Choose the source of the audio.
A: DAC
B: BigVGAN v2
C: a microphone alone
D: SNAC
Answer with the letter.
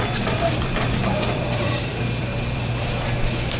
B